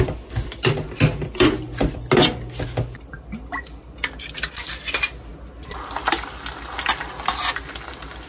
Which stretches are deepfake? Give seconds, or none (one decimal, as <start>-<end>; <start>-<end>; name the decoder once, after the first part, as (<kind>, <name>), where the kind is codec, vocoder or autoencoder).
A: none